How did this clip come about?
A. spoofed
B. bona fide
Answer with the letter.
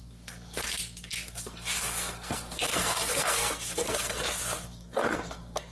A